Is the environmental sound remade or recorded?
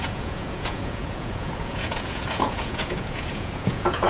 remade